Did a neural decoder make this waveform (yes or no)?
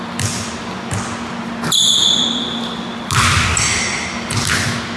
no